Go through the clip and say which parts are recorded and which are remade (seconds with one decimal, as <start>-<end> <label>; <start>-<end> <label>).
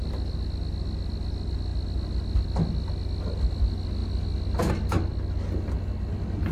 0.0-6.5 recorded